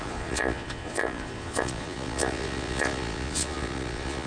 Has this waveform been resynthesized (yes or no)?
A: yes